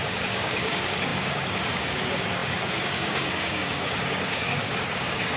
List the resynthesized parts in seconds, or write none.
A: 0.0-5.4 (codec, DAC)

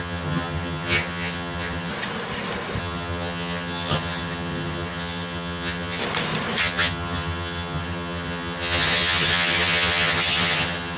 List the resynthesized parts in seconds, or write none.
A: 0.0-1.9 (vocoder, HiFi-GAN); 2.8-6.0; 6.6-11.0

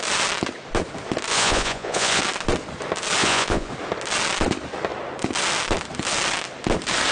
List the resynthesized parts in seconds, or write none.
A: 1.3-2.2 (vocoder, Vocos); 3.2-3.7

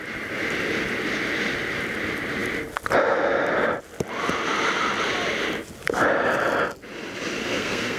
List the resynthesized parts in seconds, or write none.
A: 7.4-8.0 (codec, SNAC)